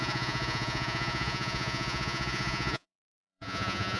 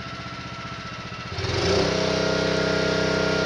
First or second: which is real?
second